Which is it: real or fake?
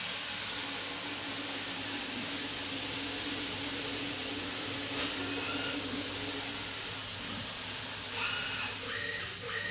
real